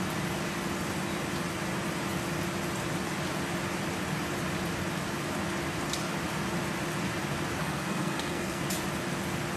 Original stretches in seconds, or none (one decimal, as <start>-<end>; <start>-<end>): 0.0-7.6; 8.6-9.6